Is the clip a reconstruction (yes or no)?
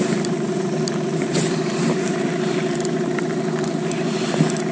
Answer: no